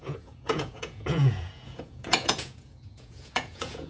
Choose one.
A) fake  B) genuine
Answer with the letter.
A